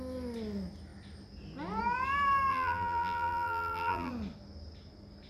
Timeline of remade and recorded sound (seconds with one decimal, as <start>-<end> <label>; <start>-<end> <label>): 0.0-2.5 recorded; 2.5-4.1 remade; 4.1-5.3 recorded